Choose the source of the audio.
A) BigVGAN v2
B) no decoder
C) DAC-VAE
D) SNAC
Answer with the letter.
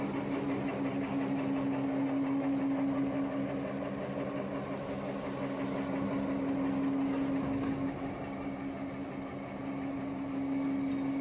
B